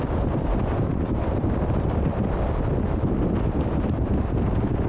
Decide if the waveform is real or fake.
fake